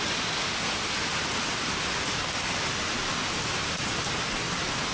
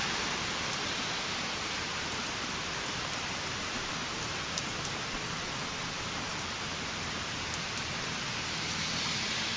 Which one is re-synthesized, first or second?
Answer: second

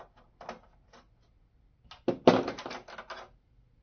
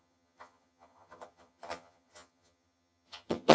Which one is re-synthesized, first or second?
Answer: second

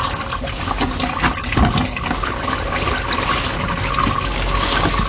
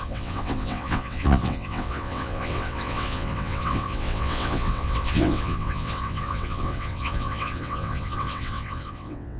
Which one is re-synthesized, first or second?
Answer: second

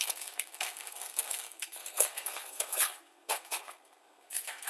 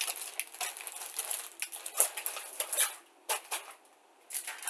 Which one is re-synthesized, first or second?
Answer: first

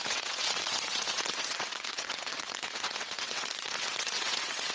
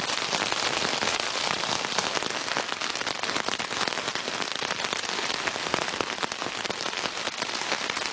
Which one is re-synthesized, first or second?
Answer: first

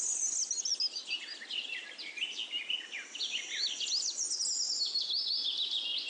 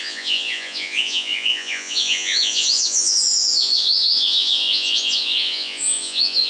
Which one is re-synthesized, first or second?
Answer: second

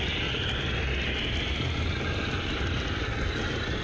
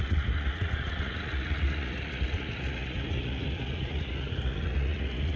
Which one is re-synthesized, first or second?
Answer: second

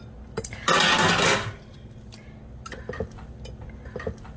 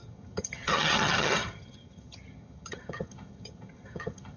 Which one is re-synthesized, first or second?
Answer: second